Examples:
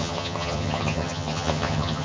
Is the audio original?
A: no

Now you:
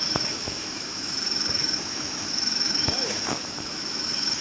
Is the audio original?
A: no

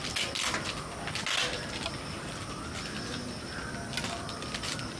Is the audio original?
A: yes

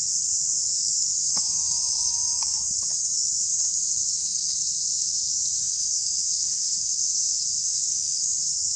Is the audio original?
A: no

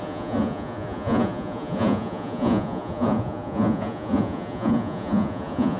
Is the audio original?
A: no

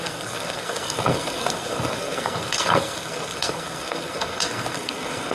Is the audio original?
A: no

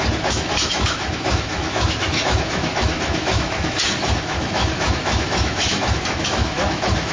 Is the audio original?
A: no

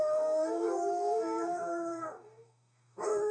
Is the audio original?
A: no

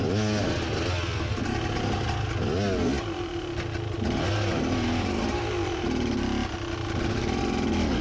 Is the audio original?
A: yes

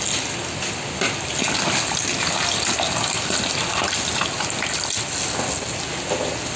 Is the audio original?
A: yes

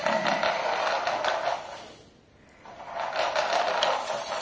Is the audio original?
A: yes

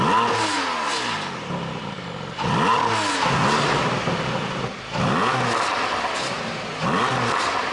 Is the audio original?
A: yes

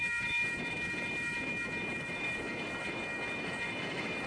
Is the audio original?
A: no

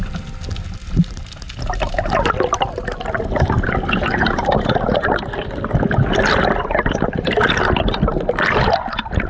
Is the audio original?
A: yes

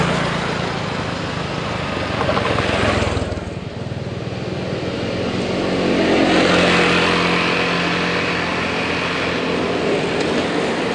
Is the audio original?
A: yes